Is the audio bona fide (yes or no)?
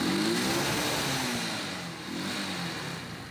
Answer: yes